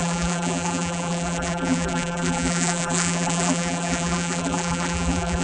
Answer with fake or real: fake